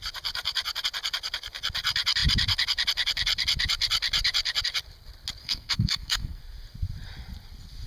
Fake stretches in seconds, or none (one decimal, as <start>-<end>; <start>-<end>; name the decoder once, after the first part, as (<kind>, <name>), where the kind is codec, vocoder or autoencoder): 5.4-6.4 (codec, SNAC)